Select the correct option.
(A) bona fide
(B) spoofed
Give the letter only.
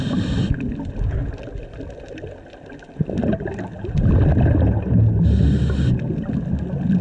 A